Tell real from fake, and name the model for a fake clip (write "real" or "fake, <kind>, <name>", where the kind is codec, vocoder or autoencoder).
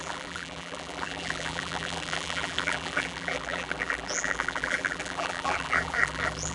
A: fake, vocoder, BigVGAN v2